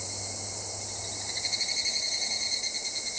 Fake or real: real